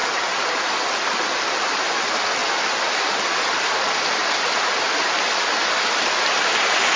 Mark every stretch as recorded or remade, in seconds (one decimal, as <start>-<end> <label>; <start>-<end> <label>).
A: 0.0-7.0 recorded